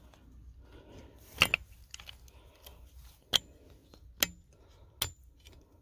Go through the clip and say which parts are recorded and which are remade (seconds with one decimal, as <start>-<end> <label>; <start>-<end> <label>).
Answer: 0.0-5.8 recorded